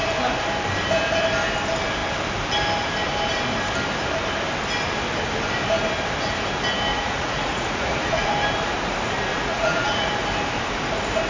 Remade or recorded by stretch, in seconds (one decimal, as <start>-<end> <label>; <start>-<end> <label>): 0.0-6.9 recorded; 6.9-8.3 remade; 8.3-9.3 recorded; 9.3-10.1 remade; 10.1-11.3 recorded